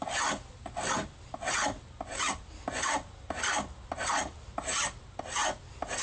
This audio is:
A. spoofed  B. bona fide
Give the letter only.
B